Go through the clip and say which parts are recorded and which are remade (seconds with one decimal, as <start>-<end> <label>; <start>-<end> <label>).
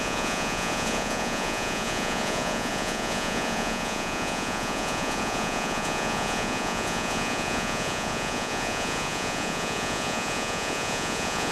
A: 0.0-11.5 remade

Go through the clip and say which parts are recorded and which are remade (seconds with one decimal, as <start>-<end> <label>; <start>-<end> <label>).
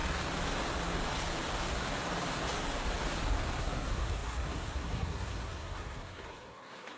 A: 0.0-3.6 recorded; 3.6-7.0 remade